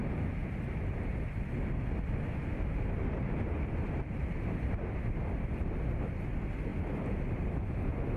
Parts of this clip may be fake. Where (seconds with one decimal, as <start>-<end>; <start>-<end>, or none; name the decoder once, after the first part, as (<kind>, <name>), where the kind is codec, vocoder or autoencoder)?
none